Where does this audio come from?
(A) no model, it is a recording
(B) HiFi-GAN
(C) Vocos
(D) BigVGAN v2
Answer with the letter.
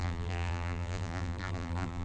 D